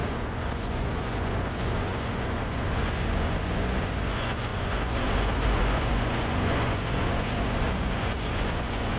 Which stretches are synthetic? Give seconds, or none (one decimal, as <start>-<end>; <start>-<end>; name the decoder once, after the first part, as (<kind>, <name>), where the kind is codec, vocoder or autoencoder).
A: 0.0-9.0 (vocoder, Vocos)